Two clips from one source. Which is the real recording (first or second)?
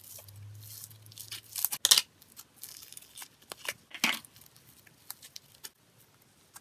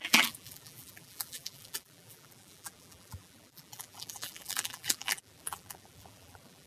first